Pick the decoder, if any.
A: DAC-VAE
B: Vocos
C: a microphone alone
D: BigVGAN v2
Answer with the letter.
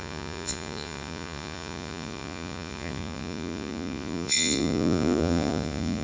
B